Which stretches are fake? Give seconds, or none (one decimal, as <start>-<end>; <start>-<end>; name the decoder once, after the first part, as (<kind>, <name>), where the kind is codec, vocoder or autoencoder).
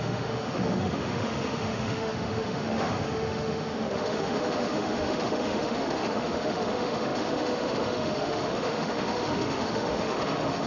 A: 0.0-10.7 (autoencoder, DAC-VAE)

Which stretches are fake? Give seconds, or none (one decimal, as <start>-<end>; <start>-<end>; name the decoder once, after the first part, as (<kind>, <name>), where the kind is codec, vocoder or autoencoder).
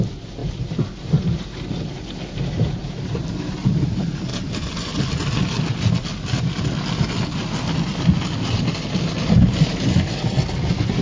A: 4.3-6.5 (vocoder, BigVGAN v2)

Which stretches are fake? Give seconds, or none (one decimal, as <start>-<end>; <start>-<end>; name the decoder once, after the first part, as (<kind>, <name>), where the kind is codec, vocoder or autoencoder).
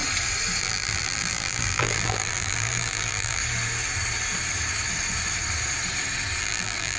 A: 0.6-3.4 (vocoder, BigVGAN v2); 6.4-7.0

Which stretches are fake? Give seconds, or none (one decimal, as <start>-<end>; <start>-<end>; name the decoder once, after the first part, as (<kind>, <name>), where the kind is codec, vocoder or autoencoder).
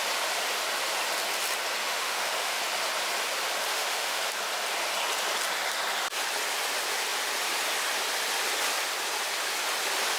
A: 1.8-2.6 (autoencoder, DAC-VAE); 3.7-4.2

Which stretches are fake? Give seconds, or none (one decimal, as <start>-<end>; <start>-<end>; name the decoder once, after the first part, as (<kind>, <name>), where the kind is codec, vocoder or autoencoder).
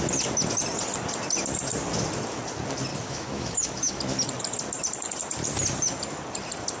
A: 2.9-4.0 (autoencoder, DAC-VAE)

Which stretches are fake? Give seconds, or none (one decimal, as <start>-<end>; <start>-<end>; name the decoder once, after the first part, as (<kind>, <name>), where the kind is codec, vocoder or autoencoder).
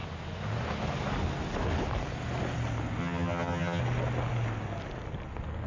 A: 3.0-3.8 (vocoder, HiFi-GAN)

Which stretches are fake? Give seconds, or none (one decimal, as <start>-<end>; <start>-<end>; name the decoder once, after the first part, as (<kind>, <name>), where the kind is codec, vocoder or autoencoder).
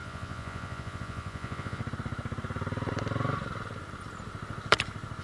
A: 0.0-1.8 (vocoder, Vocos)